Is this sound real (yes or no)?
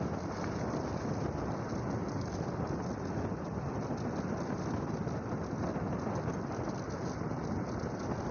yes